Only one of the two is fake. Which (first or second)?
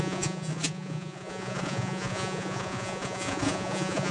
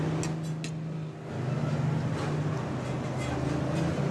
first